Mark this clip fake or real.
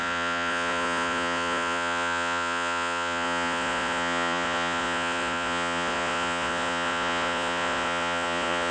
fake